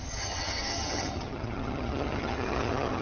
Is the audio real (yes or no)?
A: no